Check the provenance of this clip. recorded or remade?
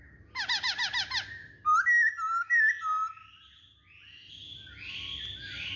recorded